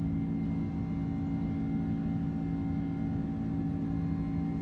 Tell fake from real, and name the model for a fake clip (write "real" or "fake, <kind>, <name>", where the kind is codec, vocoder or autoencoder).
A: real